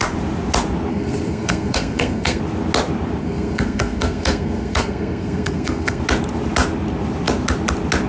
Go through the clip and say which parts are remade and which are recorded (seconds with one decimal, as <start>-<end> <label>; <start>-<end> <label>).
0.0-0.9 recorded; 0.9-2.4 remade; 2.4-3.2 recorded; 3.2-6.0 remade; 6.0-8.1 recorded